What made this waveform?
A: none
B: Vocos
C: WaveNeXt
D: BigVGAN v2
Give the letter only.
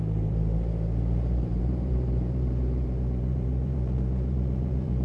D